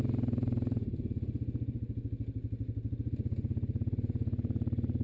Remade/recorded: recorded